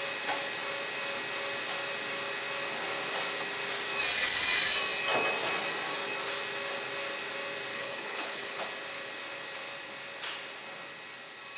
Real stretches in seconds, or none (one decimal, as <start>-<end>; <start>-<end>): 0.0-7.7; 8.6-11.6